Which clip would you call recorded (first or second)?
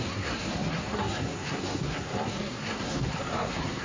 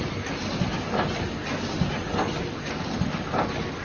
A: second